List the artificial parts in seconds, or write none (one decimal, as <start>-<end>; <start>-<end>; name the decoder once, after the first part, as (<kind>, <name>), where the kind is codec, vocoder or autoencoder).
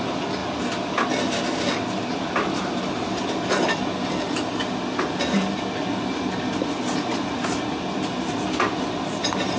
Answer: none